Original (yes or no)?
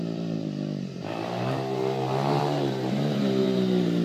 no